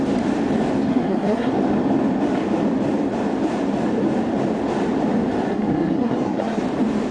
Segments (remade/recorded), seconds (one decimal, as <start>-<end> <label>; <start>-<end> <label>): 0.0-0.9 recorded; 0.9-1.5 remade; 1.5-5.5 recorded; 5.5-6.6 remade; 6.6-7.1 recorded